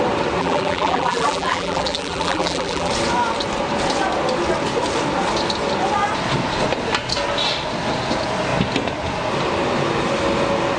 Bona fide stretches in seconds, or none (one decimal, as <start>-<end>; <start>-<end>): 0.0-0.4; 2.9-10.8